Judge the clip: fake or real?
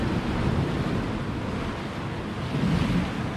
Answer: real